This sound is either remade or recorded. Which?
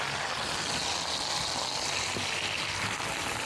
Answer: recorded